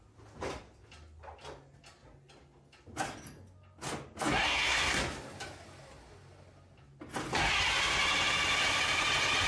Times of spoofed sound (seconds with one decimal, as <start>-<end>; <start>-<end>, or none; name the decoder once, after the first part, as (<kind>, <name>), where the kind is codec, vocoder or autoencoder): 4.4-5.0 (codec, SNAC)